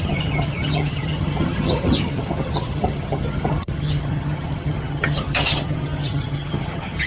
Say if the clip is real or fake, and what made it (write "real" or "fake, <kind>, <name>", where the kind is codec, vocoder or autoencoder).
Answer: fake, vocoder, HiFi-GAN